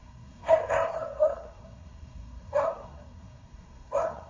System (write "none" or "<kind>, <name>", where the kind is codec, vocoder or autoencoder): codec, SNAC